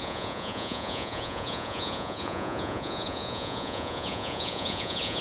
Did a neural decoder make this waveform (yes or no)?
yes